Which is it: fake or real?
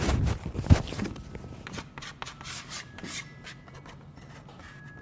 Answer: real